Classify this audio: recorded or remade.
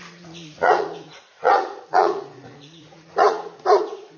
remade